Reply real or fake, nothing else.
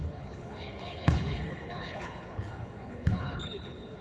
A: fake